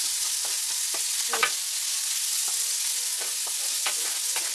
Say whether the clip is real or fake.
real